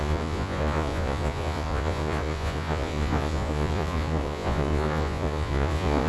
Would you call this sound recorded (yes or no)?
no